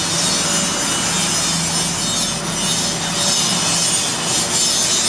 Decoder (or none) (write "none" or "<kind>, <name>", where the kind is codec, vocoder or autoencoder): none